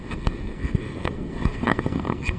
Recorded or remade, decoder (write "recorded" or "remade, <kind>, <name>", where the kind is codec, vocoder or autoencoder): remade, codec, SNAC